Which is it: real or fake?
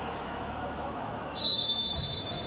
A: fake